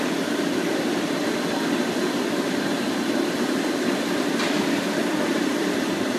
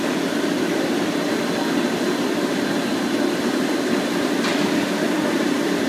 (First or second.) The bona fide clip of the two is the second